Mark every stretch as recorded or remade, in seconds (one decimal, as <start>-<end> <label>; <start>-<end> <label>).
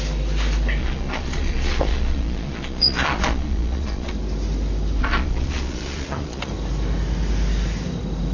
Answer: 0.0-0.8 recorded; 0.8-4.1 remade; 4.1-5.0 recorded; 5.0-6.5 remade; 6.5-8.3 recorded